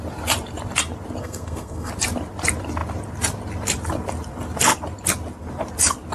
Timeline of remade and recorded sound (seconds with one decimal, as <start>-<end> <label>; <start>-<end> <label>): 0.0-1.2 recorded; 1.2-1.9 remade; 1.9-6.1 recorded